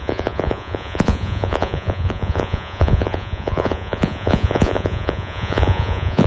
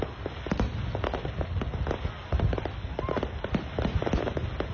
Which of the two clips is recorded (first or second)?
second